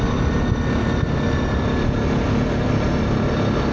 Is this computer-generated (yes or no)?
no